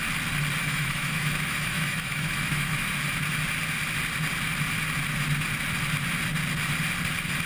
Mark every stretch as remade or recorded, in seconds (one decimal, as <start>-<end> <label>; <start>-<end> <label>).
0.0-0.6 recorded; 0.6-2.9 remade; 2.9-7.5 recorded